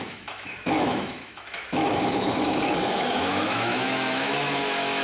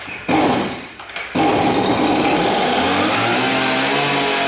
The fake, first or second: first